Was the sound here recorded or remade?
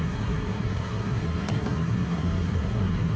remade